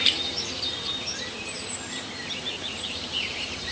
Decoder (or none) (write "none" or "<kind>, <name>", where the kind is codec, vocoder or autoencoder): vocoder, BigVGAN v2